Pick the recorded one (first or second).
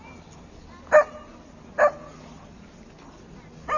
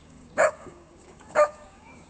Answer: first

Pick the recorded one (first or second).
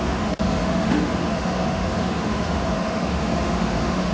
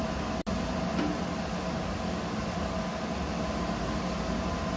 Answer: second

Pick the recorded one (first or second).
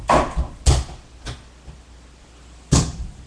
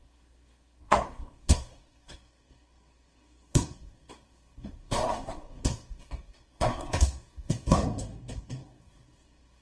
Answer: first